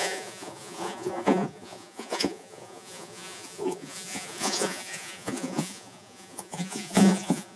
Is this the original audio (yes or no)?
no